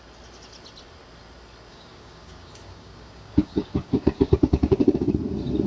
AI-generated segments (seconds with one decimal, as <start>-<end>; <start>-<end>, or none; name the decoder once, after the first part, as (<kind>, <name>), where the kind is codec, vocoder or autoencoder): 1.7-5.1 (codec, DAC)